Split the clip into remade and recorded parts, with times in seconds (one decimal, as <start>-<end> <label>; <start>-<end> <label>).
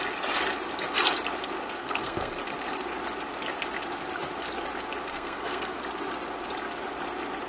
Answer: 0.0-1.8 recorded; 1.8-2.3 remade; 2.3-5.1 recorded; 5.1-5.8 remade; 5.8-7.5 recorded